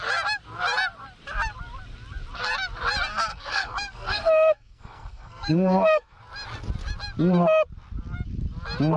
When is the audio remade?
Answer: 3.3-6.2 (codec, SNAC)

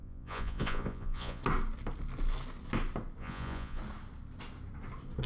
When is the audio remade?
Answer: 0.0-1.4 (vocoder, Vocos); 3.2-3.8

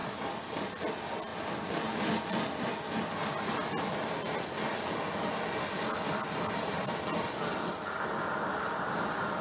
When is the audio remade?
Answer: none

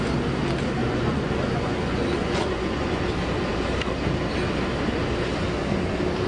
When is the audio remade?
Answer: 0.8-3.0 (vocoder, Vocos)

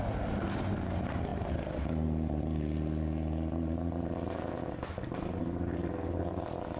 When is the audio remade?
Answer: none

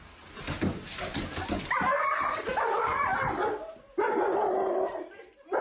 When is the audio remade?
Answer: 0.0-3.1 (vocoder, BigVGAN v2); 4.9-5.6

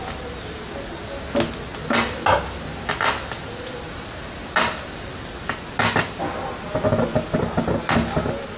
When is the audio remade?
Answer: 1.7-6.2 (vocoder, BigVGAN v2)

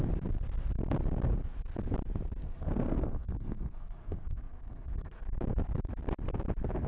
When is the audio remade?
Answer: 2.4-5.2 (codec, SNAC)